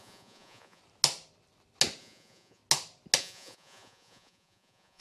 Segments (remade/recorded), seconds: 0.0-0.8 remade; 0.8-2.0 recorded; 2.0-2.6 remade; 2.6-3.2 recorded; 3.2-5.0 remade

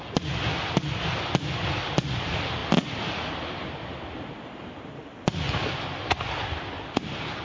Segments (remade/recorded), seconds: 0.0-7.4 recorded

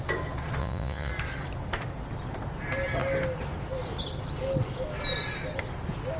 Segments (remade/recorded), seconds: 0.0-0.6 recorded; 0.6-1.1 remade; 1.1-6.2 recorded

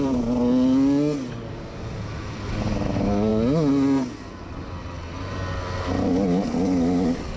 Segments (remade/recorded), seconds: 0.0-7.4 recorded